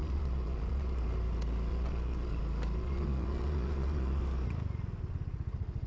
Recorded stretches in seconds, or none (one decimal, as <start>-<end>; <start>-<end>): 1.0-1.7; 2.4-2.8; 4.2-5.9